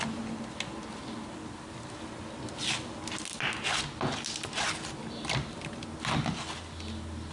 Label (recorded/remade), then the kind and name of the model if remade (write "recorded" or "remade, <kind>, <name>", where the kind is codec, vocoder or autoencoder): recorded